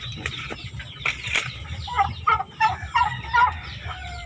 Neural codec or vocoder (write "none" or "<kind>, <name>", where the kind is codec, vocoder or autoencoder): vocoder, BigVGAN v2